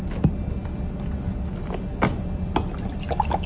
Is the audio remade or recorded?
recorded